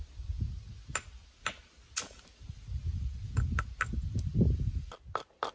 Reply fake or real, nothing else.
real